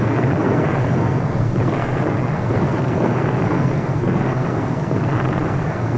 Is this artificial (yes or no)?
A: yes